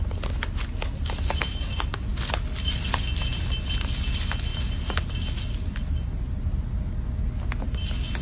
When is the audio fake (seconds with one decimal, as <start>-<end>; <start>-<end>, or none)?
none